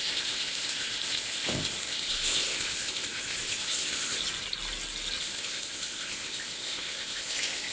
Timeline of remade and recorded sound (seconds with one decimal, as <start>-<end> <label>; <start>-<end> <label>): 0.0-4.2 remade; 4.2-5.2 recorded; 5.2-7.7 remade